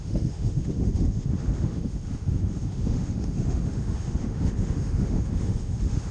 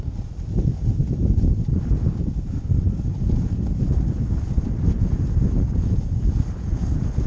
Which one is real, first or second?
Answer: second